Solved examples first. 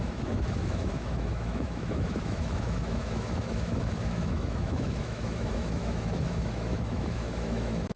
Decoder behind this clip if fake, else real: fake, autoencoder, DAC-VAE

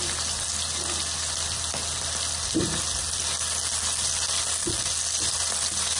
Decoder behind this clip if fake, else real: real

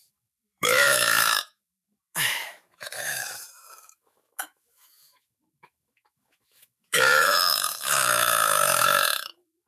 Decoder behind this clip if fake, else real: fake, autoencoder, DAC-VAE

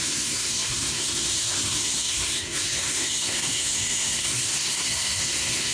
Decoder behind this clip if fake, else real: fake, codec, SNAC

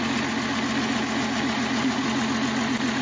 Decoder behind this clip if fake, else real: real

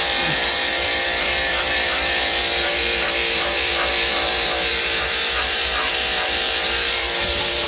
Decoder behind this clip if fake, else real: fake, vocoder, BigVGAN v2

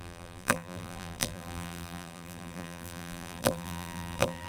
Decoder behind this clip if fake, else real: fake, vocoder, BigVGAN v2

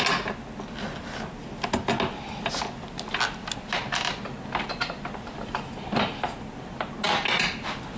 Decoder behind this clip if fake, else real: real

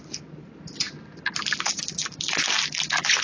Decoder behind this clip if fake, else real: real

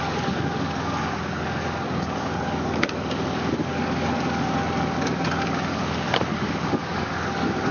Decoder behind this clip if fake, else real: fake, codec, DAC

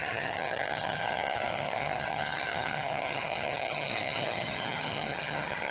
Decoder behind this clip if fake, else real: fake, vocoder, HiFi-GAN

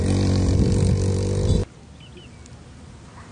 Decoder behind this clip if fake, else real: real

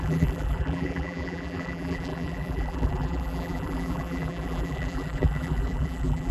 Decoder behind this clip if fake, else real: fake, vocoder, BigVGAN v2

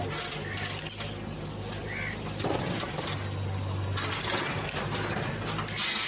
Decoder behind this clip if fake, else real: real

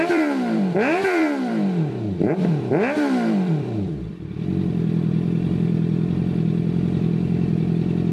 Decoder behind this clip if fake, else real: fake, vocoder, BigVGAN v2